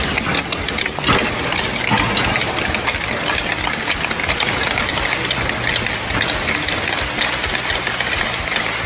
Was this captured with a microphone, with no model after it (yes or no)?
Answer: yes